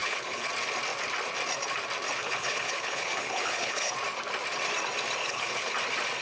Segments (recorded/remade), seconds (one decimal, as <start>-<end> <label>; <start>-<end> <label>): 0.0-0.5 remade; 0.5-2.2 recorded; 2.2-3.9 remade; 3.9-5.2 recorded; 5.2-5.7 remade; 5.7-6.2 recorded